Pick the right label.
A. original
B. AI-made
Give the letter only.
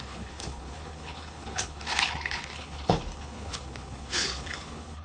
B